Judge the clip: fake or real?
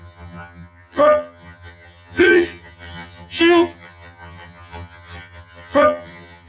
fake